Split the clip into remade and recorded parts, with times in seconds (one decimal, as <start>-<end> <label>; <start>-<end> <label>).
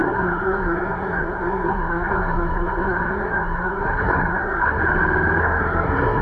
0.0-4.8 remade; 4.8-5.4 recorded; 5.4-6.2 remade